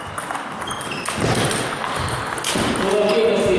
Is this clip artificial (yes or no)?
no